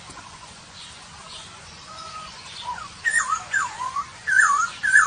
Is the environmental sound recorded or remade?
remade